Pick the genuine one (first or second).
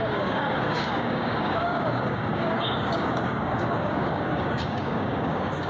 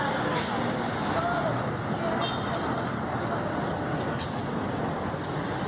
second